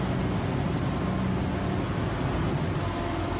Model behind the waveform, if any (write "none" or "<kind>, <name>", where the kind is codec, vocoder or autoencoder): none